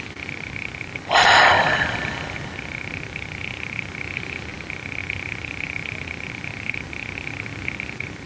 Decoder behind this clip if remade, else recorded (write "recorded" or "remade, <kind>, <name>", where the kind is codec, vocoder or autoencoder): recorded